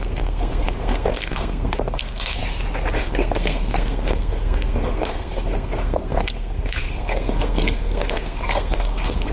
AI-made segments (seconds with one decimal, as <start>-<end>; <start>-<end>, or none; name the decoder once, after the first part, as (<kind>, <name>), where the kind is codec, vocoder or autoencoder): 0.0-2.4 (codec, SNAC); 3.0-9.3